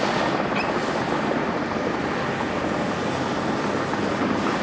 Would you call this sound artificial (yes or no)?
no